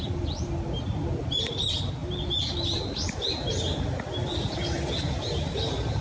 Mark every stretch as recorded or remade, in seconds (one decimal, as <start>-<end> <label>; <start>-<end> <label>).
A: 0.0-6.0 recorded